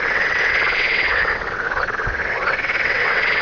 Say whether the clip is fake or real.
fake